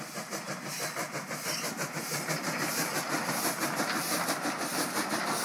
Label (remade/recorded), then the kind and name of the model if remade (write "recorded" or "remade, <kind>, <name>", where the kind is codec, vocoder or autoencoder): recorded